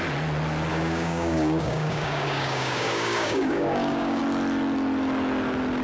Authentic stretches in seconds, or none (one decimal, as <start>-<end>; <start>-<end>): 0.0-0.7; 4.2-5.8